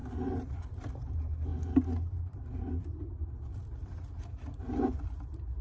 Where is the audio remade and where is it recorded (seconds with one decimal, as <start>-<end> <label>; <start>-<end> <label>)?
0.0-1.5 remade; 1.5-2.1 recorded; 2.1-5.6 remade